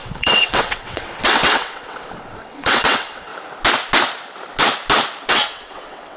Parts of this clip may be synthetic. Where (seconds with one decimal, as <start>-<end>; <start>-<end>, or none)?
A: 0.0-3.3; 5.3-6.2